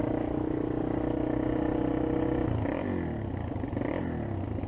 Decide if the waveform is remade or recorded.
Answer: recorded